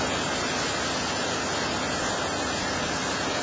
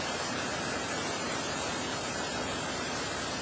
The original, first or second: first